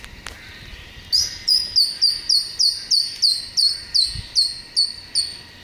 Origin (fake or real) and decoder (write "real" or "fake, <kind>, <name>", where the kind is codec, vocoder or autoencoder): real